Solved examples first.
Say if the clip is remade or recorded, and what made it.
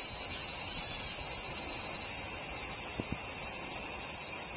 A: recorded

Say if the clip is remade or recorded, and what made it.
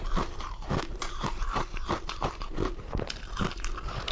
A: remade, vocoder, BigVGAN v2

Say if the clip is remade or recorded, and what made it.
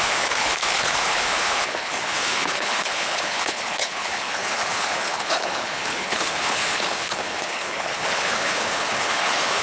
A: remade, codec, HILCodec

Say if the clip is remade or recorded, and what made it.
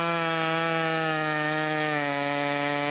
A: remade, autoencoder, DAC-VAE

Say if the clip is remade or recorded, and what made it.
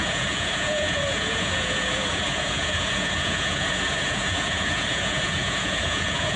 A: remade, vocoder, Vocos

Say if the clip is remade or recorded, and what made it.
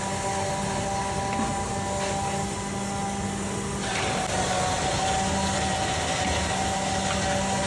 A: recorded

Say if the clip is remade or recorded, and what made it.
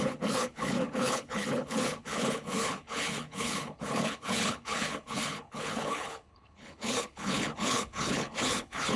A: remade, codec, HILCodec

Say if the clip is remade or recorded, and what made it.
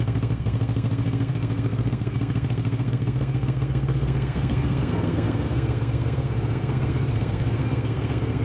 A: remade, codec, SNAC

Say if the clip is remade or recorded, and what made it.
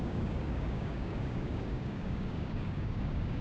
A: remade, codec, DAC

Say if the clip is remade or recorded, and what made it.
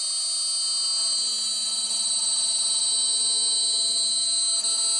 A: recorded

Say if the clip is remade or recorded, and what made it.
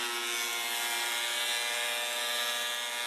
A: recorded